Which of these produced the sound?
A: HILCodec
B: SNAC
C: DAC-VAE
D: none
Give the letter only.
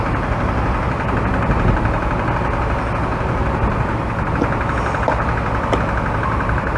D